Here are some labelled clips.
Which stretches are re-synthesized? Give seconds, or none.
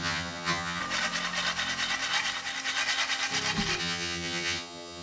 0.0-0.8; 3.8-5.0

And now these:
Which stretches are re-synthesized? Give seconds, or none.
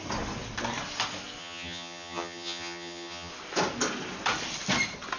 1.4-3.3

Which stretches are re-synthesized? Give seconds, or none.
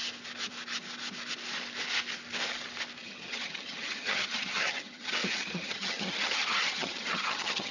3.0-7.7